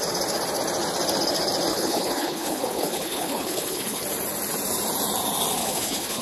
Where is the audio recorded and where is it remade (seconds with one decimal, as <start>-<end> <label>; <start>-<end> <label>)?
0.0-1.7 recorded; 1.7-4.0 remade; 4.0-5.6 recorded; 5.6-6.2 remade